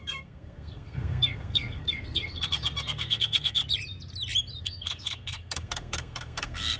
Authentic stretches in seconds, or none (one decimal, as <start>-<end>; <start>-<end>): 3.6-4.6